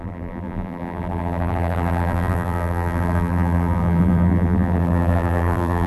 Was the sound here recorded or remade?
remade